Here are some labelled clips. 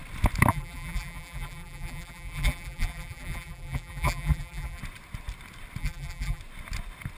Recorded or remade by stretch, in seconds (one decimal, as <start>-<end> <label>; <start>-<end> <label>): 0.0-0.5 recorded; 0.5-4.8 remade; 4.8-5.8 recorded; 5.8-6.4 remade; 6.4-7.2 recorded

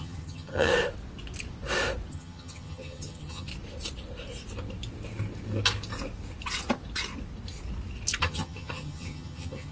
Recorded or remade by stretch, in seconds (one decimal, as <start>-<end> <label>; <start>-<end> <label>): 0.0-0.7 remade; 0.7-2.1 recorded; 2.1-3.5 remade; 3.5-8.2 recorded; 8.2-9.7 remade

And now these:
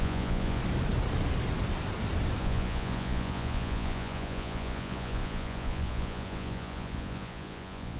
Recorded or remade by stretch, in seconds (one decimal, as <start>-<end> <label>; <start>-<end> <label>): 0.0-0.6 remade; 0.6-2.4 recorded; 2.4-8.0 remade

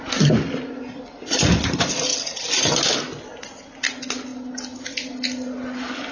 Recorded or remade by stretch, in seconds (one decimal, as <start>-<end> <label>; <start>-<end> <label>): 0.0-6.1 recorded

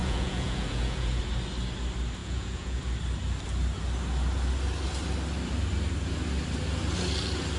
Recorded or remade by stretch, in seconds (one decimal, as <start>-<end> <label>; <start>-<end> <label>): 0.0-1.2 remade; 1.2-2.2 recorded; 2.2-2.8 remade; 2.8-7.6 recorded

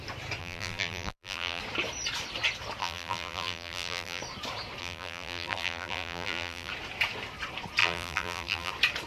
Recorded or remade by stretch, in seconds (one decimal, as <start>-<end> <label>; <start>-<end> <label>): 0.0-0.4 recorded; 0.4-1.6 remade; 1.6-2.8 recorded; 2.8-4.2 remade; 4.2-4.8 recorded; 4.8-6.7 remade; 6.7-7.8 recorded; 7.8-8.7 remade; 8.7-9.1 recorded

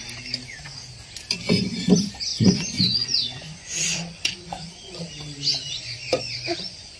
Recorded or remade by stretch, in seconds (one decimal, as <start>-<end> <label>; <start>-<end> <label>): 0.0-2.3 recorded; 2.3-5.1 remade; 5.1-5.5 recorded; 5.5-7.0 remade

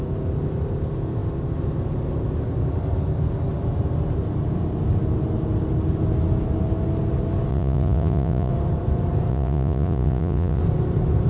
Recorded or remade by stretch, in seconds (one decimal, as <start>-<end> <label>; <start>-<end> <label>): 0.0-7.5 recorded; 7.5-8.5 remade; 8.5-9.3 recorded; 9.3-10.6 remade; 10.6-11.3 recorded